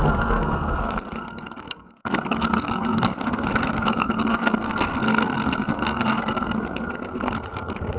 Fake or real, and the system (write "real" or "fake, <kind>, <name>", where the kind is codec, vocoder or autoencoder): fake, codec, SNAC